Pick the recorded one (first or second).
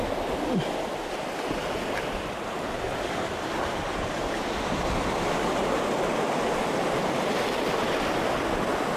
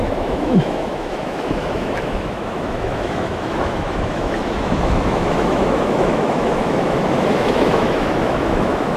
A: first